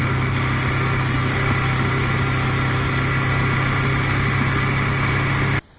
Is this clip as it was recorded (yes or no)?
yes